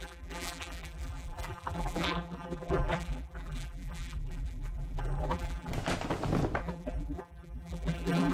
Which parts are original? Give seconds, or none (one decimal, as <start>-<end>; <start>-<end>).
5.7-6.6